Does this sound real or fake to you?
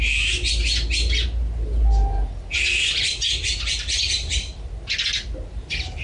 real